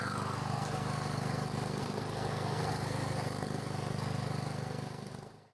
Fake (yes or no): yes